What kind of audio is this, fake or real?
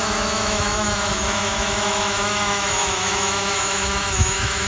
fake